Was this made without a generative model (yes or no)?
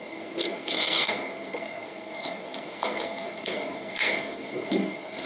no